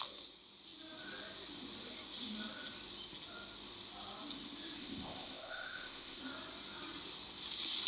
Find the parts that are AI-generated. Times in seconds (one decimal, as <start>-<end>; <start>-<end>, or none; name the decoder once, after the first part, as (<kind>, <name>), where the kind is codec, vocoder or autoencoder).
4.8-6.2 (codec, ZipCodec)